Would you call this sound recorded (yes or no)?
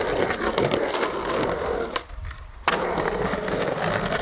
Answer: yes